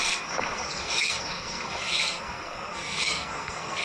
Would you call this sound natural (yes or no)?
no